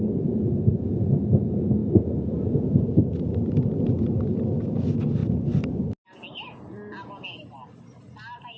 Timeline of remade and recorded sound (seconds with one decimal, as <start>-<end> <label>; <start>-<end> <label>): 0.0-8.6 recorded